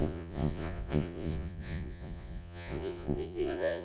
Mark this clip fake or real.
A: fake